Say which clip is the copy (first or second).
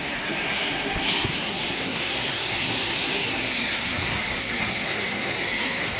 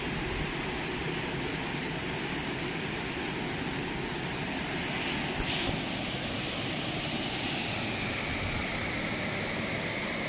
first